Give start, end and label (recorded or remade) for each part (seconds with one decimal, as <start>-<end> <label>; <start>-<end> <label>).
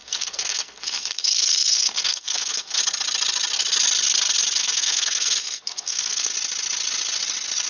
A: 0.0-2.8 remade; 2.8-4.6 recorded; 4.6-6.3 remade; 6.3-7.7 recorded